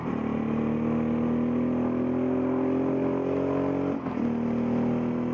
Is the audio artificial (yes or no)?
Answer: no